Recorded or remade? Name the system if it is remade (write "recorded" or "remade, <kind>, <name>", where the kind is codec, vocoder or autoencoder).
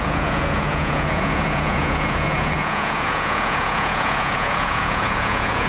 remade, vocoder, Vocos